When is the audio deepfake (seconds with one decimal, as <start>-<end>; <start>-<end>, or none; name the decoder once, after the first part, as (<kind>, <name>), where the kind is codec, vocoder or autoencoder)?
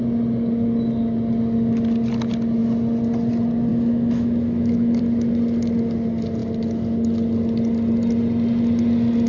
3.7-5.0 (autoencoder, DAC-VAE)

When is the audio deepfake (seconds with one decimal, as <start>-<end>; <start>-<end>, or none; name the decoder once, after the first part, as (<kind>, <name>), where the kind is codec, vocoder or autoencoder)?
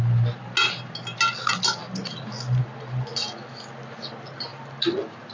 none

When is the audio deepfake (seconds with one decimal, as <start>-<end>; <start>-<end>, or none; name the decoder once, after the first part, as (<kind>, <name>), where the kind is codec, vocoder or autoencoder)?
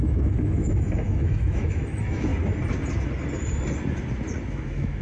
0.0-2.3 (autoencoder, DAC-VAE); 4.5-5.0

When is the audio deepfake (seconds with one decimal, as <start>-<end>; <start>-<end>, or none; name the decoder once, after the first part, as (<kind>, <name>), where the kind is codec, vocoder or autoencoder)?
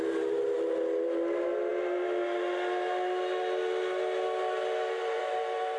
none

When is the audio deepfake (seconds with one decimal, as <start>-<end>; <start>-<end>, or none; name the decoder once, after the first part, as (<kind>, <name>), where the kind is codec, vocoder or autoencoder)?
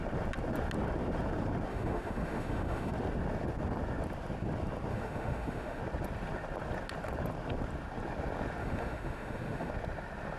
1.7-2.9 (autoencoder, DAC-VAE); 4.9-5.8; 8.6-9.7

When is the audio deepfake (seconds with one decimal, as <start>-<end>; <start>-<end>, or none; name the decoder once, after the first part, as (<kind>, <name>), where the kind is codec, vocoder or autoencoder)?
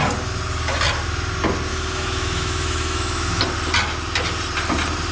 1.7-3.4 (autoencoder, DAC-VAE)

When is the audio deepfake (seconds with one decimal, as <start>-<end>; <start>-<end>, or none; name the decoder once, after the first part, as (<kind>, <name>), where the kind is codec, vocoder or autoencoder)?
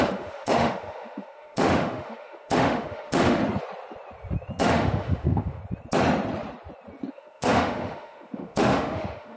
0.0-3.4 (autoencoder, DAC-VAE); 4.6-5.6; 7.1-9.4